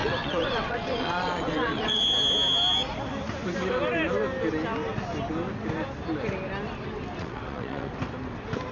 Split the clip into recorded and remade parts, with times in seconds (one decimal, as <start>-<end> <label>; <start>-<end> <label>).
0.0-2.0 remade; 2.0-7.2 recorded; 7.2-7.9 remade; 7.9-8.7 recorded